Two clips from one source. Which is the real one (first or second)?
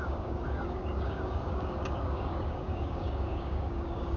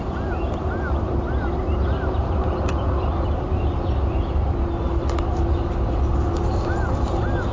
second